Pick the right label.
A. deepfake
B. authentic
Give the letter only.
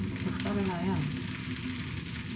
B